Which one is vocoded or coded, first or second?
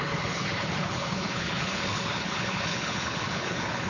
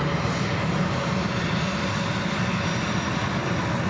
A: first